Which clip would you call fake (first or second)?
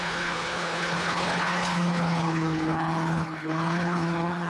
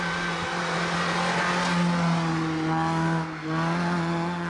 first